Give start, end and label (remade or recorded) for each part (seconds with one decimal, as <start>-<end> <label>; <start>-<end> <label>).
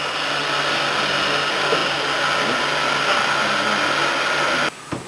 0.0-5.1 recorded